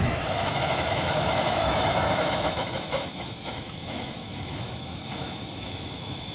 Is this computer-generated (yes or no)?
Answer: yes